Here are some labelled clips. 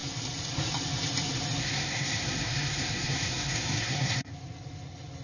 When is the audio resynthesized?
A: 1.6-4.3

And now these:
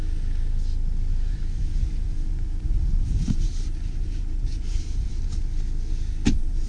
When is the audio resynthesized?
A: 1.1-5.1

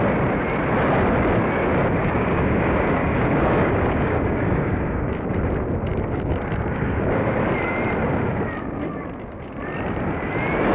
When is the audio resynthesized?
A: 2.0-5.3; 5.9-7.0